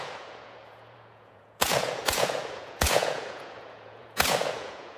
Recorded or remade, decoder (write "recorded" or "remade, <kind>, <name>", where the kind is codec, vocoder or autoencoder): remade, vocoder, Vocos